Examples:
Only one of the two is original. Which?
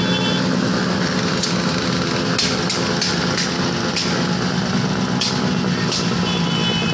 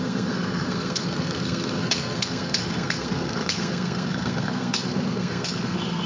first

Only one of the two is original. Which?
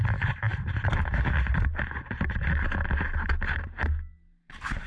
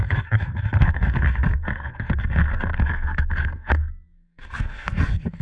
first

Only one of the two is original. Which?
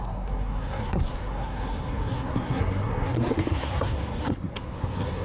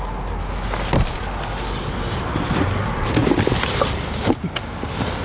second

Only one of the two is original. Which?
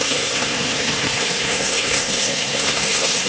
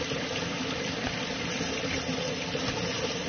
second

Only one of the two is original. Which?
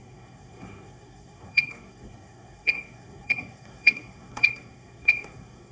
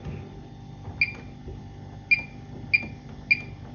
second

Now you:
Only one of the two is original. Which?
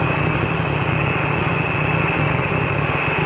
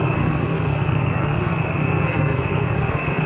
first